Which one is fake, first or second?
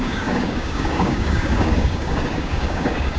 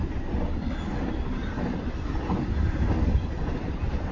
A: first